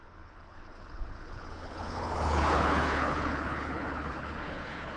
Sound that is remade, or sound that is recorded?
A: remade